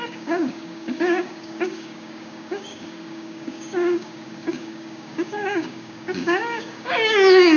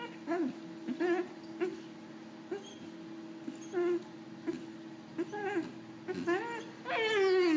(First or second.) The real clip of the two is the second